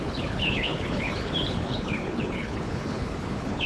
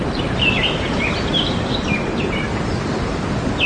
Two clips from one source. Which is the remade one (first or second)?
first